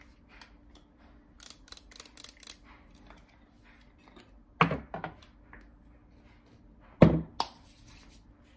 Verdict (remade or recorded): recorded